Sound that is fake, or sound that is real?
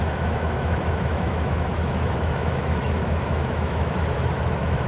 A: fake